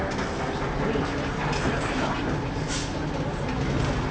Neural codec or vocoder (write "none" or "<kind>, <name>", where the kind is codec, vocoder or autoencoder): none